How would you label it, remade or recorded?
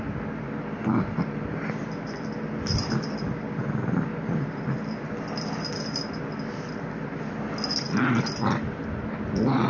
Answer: recorded